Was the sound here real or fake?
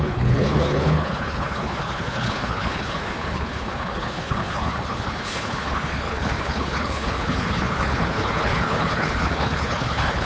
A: fake